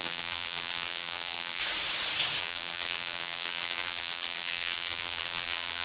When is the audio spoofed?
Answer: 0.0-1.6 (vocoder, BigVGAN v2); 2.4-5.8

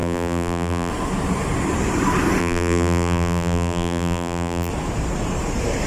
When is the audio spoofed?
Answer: 0.0-0.9 (vocoder, BigVGAN v2); 2.4-4.7